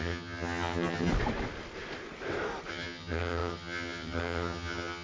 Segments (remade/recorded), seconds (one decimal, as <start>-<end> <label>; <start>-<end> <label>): 0.0-1.1 remade; 1.1-2.7 recorded; 2.7-5.0 remade